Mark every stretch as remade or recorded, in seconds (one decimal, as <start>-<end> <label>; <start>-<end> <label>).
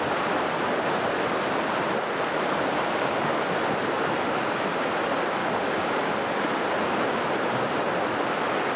0.0-5.4 recorded; 5.4-6.0 remade; 6.0-8.8 recorded